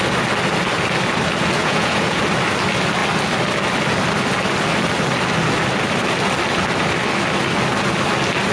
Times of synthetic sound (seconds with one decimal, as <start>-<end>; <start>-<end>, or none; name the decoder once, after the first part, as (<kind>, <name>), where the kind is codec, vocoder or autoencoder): 1.6-2.2 (vocoder, Vocos)